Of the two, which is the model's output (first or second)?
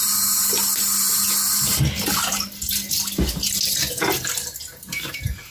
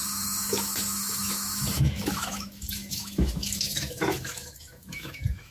second